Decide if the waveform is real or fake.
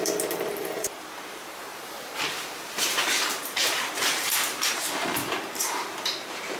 fake